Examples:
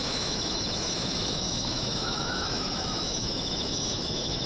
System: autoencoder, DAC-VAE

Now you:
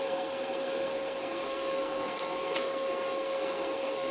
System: codec, SNAC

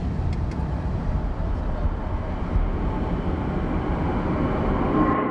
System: none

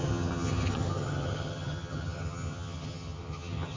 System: vocoder, HiFi-GAN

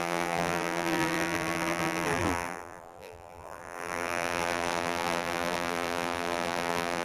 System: vocoder, BigVGAN v2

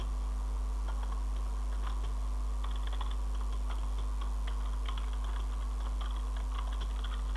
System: none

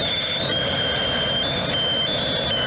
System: none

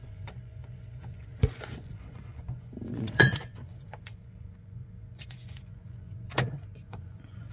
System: vocoder, Vocos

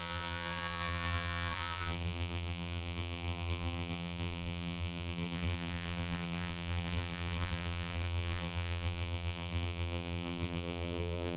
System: vocoder, BigVGAN v2